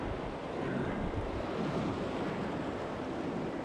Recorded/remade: recorded